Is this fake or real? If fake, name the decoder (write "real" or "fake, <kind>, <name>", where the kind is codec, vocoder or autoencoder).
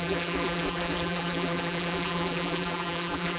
fake, vocoder, BigVGAN v2